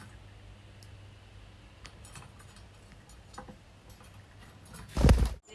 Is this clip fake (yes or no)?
no